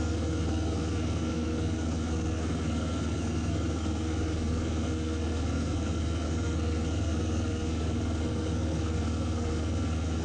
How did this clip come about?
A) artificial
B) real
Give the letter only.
A